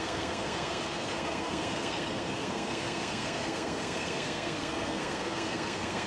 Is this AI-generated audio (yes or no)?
yes